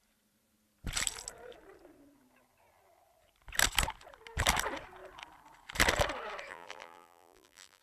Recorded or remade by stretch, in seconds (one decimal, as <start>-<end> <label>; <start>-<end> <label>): 0.0-6.5 recorded; 6.5-7.8 remade

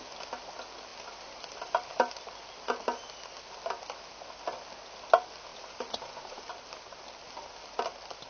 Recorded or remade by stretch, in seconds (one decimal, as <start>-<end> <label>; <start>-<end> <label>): 0.0-5.5 recorded; 5.5-6.5 remade; 6.5-8.3 recorded

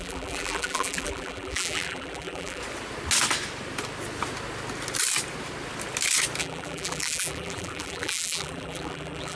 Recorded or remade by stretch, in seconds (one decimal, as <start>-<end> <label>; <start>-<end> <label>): 0.0-2.6 remade; 2.6-6.4 recorded; 6.4-9.4 remade

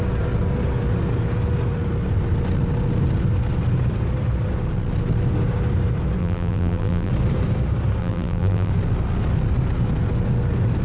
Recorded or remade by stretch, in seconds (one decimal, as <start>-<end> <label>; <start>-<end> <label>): 0.0-6.2 recorded; 6.2-7.1 remade; 7.1-8.0 recorded; 8.0-8.7 remade; 8.7-10.8 recorded

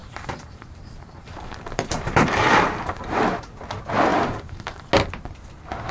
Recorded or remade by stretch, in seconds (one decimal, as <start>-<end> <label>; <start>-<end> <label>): 0.0-3.5 remade; 3.5-4.1 recorded; 4.1-4.8 remade; 4.8-5.9 recorded